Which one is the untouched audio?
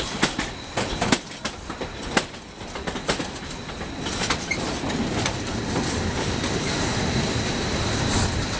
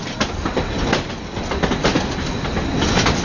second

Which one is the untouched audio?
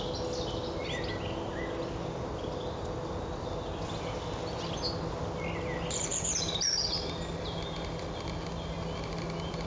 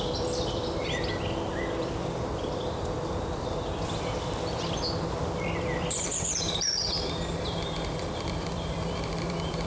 first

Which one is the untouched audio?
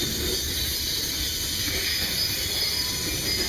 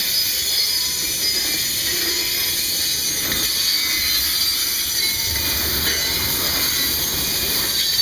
second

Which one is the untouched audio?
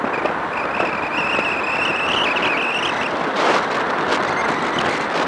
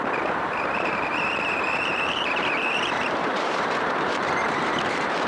first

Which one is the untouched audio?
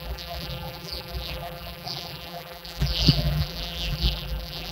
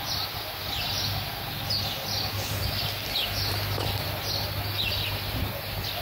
second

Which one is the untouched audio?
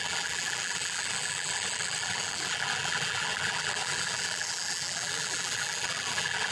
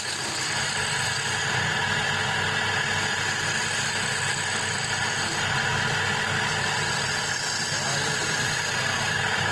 second